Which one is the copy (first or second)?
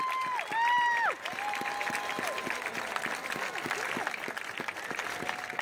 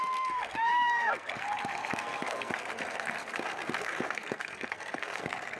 second